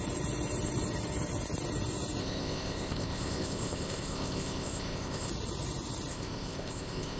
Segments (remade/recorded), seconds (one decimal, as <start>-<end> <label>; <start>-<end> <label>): 0.0-2.2 recorded; 2.2-5.3 remade; 5.3-6.1 recorded; 6.1-7.2 remade